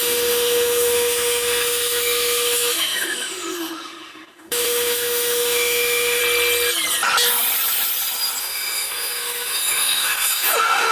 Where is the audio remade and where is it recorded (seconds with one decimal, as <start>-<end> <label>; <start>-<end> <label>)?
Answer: 0.0-6.2 remade; 6.2-8.4 recorded; 8.4-10.9 remade